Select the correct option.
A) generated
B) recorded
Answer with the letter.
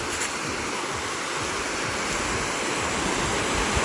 B